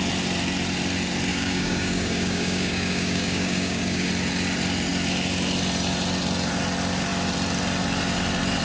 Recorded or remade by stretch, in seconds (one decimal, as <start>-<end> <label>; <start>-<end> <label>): 0.0-1.3 recorded; 1.3-4.1 remade; 4.1-8.6 recorded